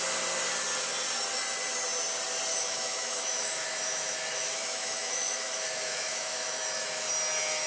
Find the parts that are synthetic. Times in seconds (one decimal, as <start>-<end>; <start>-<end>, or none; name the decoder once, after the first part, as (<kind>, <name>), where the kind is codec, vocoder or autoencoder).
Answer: 2.5-7.1 (autoencoder, DAC-VAE)